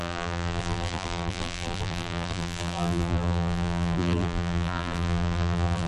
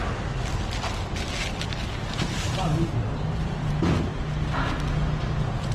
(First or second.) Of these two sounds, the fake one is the first